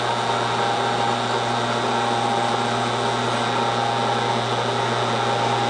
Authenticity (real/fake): real